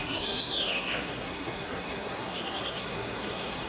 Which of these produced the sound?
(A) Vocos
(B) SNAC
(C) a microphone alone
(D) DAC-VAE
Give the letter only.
B